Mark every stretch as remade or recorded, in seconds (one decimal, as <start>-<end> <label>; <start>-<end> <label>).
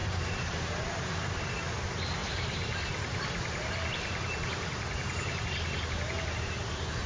0.0-1.5 remade; 1.5-2.2 recorded; 2.2-6.5 remade; 6.5-7.1 recorded